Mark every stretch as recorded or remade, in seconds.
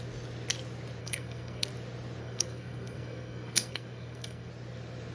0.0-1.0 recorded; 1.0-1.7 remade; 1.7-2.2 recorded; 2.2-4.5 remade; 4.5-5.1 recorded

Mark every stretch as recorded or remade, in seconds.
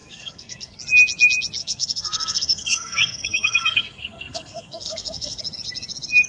0.0-0.8 remade; 0.8-1.6 recorded; 1.6-5.4 remade; 5.4-6.3 recorded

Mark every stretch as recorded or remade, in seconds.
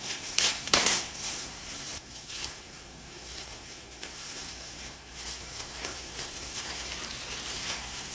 0.0-6.9 remade; 6.9-7.5 recorded; 7.5-8.1 remade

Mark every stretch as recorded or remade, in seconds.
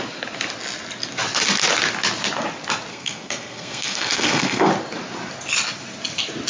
0.0-2.9 recorded; 2.9-4.7 remade; 4.7-6.5 recorded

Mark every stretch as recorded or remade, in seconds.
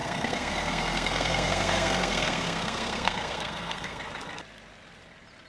0.0-4.0 remade; 4.0-5.5 recorded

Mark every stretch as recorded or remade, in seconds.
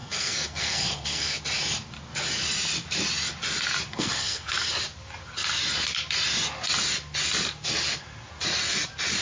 0.0-1.4 remade; 1.4-3.9 recorded; 3.9-4.5 remade; 4.5-9.2 recorded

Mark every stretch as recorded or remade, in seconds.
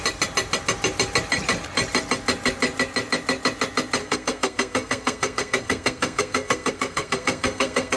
0.0-4.0 recorded; 4.0-8.0 remade